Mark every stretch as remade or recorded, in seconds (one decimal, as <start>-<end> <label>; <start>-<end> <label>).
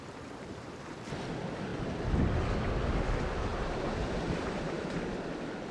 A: 0.0-3.5 recorded; 3.5-5.0 remade; 5.0-5.7 recorded